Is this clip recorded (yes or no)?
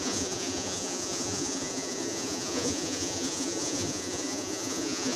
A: no